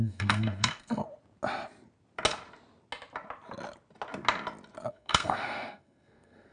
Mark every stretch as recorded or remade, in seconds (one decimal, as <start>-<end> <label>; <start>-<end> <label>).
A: 0.0-1.0 remade; 1.0-4.9 recorded; 4.9-6.5 remade